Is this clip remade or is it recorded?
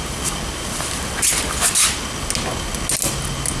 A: recorded